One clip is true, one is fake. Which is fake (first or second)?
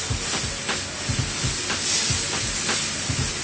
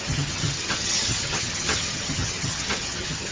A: second